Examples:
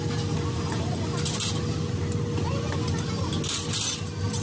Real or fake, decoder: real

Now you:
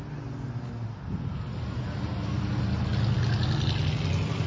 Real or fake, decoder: real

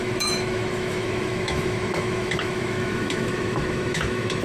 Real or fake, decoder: fake, autoencoder, DAC-VAE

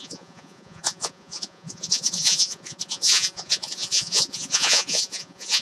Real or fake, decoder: fake, vocoder, Vocos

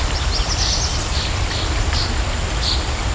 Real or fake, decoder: real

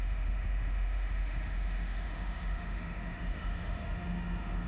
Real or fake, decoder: fake, autoencoder, DAC-VAE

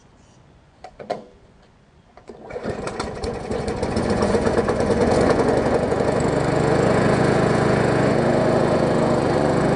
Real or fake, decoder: fake, vocoder, Vocos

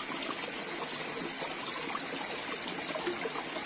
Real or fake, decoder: real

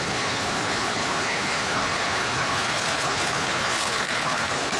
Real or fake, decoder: fake, codec, HILCodec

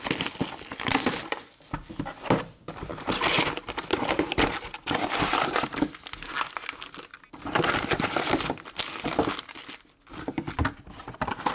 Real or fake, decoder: real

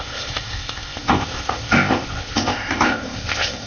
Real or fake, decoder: fake, codec, ZipCodec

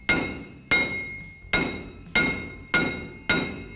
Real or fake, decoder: real